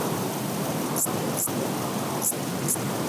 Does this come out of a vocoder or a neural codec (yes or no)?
no